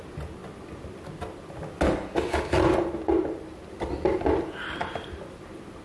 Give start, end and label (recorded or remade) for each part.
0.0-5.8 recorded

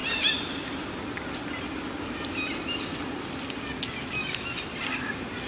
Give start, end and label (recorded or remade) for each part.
0.0-1.0 remade; 1.0-5.5 recorded

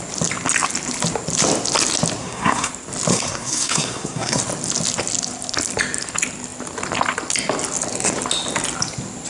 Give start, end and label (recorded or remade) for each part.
0.0-2.2 recorded; 2.2-2.7 remade; 2.7-3.1 recorded; 3.1-4.4 remade; 4.4-9.3 recorded

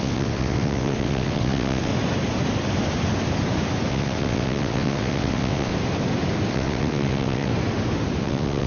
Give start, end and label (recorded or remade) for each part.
0.0-1.9 remade; 1.9-3.9 recorded; 3.9-5.7 remade; 5.7-6.5 recorded; 6.5-7.5 remade; 7.5-8.2 recorded; 8.2-8.7 remade

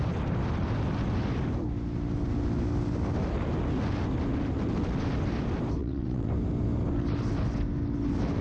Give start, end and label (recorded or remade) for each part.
0.0-5.8 recorded; 5.8-6.3 remade; 6.3-8.4 recorded

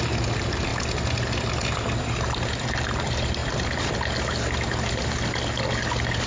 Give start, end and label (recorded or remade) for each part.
0.0-0.7 remade; 0.7-2.0 recorded; 2.0-3.4 remade; 3.4-6.3 recorded